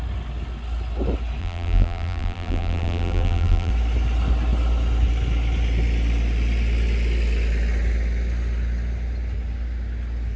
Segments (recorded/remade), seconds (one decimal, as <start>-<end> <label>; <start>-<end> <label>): 0.0-1.4 recorded; 1.4-3.7 remade; 3.7-10.4 recorded